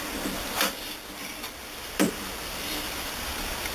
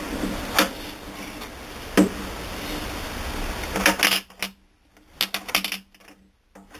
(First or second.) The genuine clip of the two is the second